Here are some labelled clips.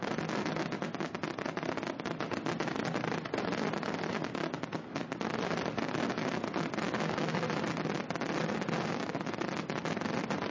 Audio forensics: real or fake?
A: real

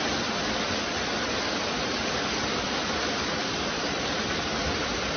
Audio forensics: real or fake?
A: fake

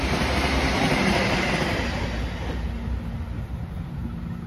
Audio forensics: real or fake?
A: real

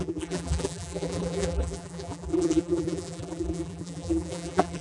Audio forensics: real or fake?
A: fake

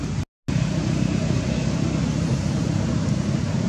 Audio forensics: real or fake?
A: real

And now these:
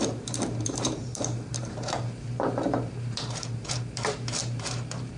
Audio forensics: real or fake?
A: fake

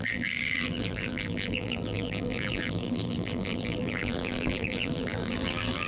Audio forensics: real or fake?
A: fake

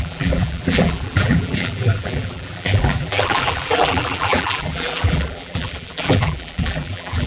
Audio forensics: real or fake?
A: fake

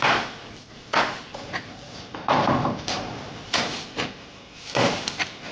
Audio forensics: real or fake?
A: fake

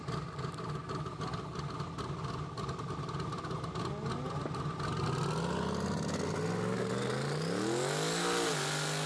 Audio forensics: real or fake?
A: real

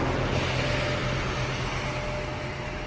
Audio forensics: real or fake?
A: real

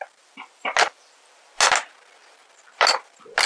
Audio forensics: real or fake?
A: real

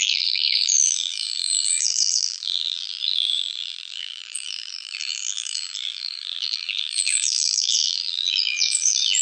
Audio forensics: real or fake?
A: fake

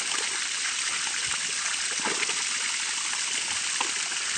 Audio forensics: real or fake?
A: real